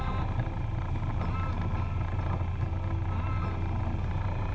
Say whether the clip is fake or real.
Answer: real